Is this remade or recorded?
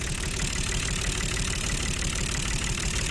remade